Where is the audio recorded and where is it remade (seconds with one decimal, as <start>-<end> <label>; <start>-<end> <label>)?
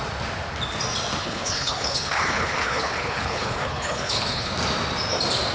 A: 0.0-1.2 recorded; 1.2-4.5 remade; 4.5-5.5 recorded